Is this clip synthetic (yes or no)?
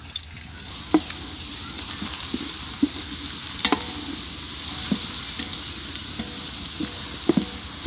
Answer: no